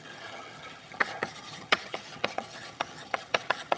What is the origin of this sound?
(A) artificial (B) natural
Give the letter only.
A